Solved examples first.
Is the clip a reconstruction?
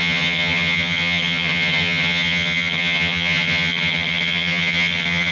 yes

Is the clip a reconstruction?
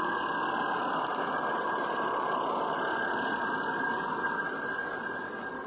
no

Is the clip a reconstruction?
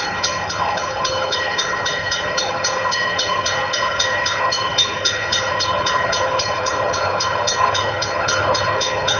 yes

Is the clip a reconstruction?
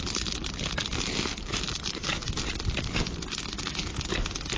no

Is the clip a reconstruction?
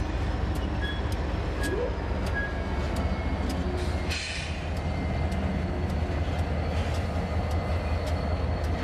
no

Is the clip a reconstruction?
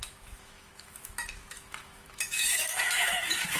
yes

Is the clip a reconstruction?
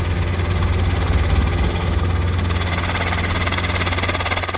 no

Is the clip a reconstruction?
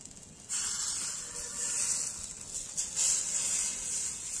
no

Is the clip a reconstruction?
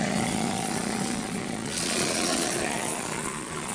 yes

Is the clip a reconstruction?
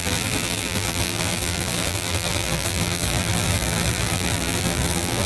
yes